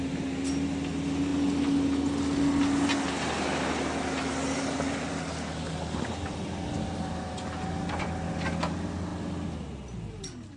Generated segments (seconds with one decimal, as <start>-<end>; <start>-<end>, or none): none